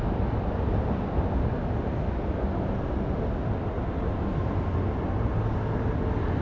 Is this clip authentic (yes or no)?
yes